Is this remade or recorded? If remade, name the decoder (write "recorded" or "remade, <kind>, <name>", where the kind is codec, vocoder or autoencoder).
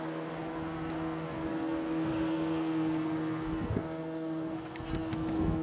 remade, codec, SNAC